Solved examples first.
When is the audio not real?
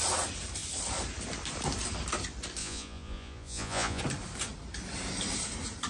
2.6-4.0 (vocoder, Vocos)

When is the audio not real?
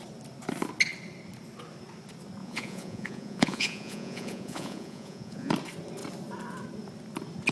2.4-5.5 (vocoder, Vocos)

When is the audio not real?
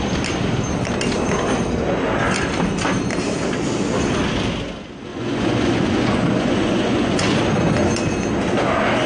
5.1-7.4 (vocoder, Vocos)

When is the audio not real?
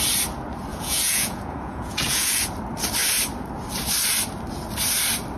0.7-2.4 (vocoder, Vocos)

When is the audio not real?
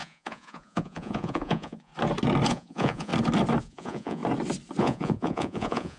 0.0-1.9 (vocoder, Vocos); 2.5-3.1; 3.6-4.2; 4.8-6.0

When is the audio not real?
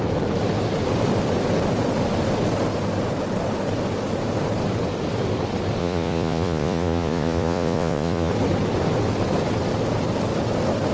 5.8-8.3 (vocoder, Vocos)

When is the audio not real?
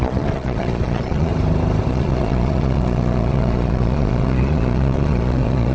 0.0-1.3 (vocoder, Vocos); 1.9-5.7